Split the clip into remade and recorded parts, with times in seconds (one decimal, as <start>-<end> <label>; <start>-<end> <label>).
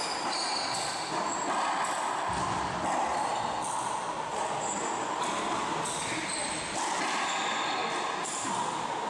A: 0.0-9.1 recorded